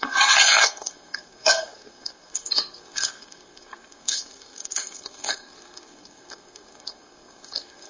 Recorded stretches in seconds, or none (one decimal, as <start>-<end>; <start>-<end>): none